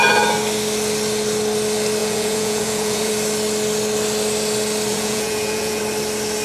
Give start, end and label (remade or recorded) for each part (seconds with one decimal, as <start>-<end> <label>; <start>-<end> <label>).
0.0-2.0 recorded; 2.0-3.1 remade; 3.1-4.9 recorded; 4.9-5.8 remade; 5.8-6.4 recorded